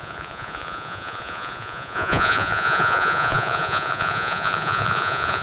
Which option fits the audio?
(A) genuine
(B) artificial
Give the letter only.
B